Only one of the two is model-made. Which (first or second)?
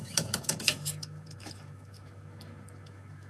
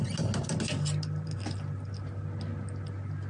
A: first